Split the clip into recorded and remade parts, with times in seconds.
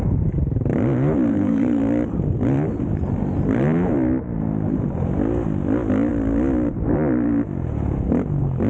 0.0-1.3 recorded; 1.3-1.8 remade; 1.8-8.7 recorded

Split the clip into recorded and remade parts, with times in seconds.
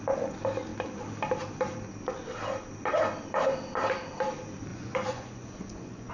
0.0-4.7 recorded; 4.7-6.1 remade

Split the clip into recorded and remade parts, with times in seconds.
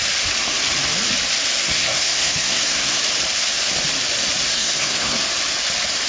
0.0-1.7 recorded; 1.7-3.0 remade; 3.0-4.5 recorded; 4.5-5.2 remade; 5.2-6.1 recorded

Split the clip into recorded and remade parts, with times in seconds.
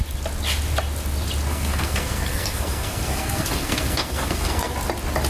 0.0-1.5 recorded; 1.5-4.7 remade; 4.7-5.3 recorded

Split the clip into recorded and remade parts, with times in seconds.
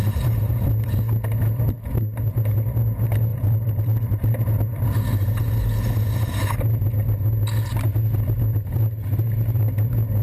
0.0-3.3 recorded; 3.3-4.3 remade; 4.3-10.2 recorded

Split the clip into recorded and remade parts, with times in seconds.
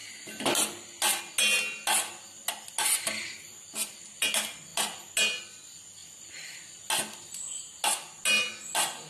0.0-9.1 recorded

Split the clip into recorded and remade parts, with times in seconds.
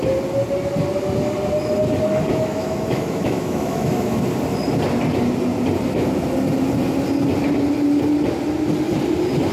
0.0-2.3 recorded; 2.3-4.2 remade; 4.2-9.5 recorded